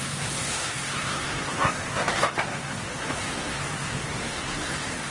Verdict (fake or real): fake